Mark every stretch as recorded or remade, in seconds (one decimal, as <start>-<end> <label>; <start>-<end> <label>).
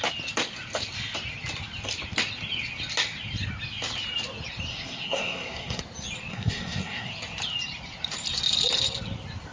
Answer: 0.0-4.7 recorded; 4.7-5.8 remade; 5.8-6.3 recorded; 6.3-7.1 remade; 7.1-9.5 recorded